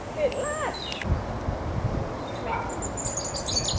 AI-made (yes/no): no